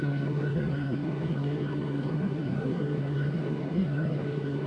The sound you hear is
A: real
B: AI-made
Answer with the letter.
B